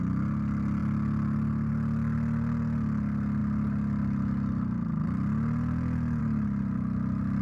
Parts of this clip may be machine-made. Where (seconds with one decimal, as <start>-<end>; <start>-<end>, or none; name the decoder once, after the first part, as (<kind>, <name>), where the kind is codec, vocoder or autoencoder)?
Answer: none